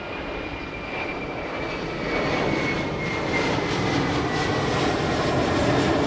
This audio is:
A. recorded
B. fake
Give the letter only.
B